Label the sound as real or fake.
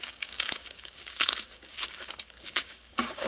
fake